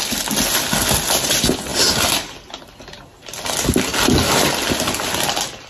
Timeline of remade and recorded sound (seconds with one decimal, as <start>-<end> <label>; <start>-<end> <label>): 0.0-5.7 recorded

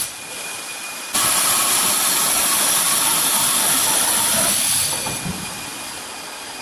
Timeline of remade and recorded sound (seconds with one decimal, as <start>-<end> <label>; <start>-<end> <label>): 0.0-6.6 recorded

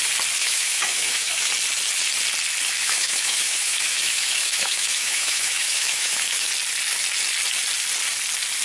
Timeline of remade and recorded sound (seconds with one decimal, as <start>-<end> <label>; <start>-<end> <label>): 0.0-0.4 recorded; 0.4-1.5 remade; 1.5-2.8 recorded; 2.8-6.5 remade; 6.5-8.6 recorded